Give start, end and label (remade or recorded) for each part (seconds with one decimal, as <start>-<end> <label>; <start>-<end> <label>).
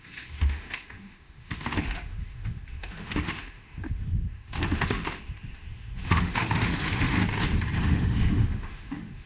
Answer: 0.0-7.2 remade; 7.2-7.8 recorded; 7.8-9.2 remade